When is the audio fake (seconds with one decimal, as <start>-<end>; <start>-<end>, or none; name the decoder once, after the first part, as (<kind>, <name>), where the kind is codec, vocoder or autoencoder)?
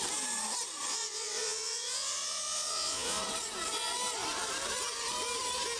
0.9-3.2 (vocoder, Vocos)